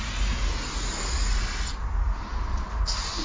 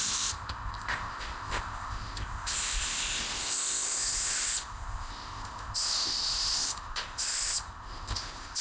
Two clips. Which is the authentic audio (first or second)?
first